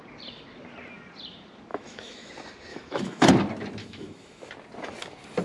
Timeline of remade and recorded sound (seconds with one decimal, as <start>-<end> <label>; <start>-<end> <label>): 0.0-1.7 recorded; 1.7-2.3 remade; 2.3-2.7 recorded; 2.7-3.3 remade; 3.3-3.8 recorded; 3.8-4.5 remade; 4.5-5.4 recorded